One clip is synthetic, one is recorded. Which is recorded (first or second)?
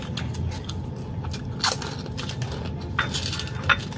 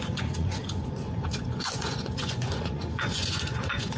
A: first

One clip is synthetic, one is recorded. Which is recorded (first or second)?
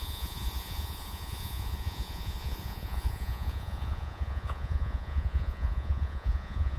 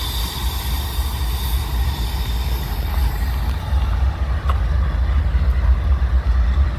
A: second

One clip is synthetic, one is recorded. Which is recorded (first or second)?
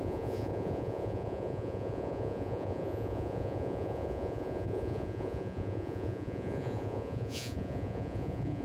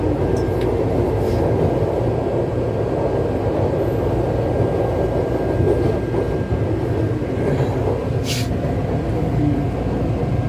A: second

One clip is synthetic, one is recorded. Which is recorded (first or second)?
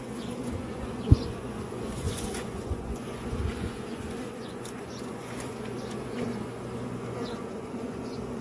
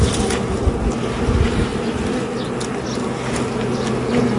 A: second